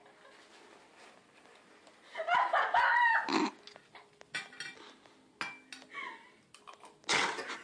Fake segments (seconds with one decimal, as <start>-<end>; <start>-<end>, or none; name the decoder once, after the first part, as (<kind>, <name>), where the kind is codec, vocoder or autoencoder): none